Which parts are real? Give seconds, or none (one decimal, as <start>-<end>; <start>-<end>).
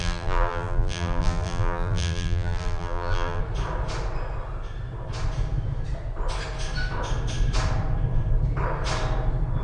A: 3.4-9.6